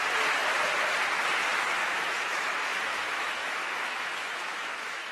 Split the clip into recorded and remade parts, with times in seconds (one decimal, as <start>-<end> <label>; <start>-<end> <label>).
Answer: 0.0-1.8 recorded; 1.8-5.1 remade